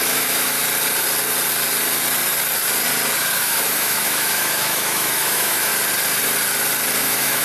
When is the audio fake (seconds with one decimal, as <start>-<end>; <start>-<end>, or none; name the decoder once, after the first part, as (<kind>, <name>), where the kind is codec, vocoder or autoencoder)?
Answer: 0.0-0.6 (autoencoder, DAC-VAE); 3.4-5.7; 7.0-7.4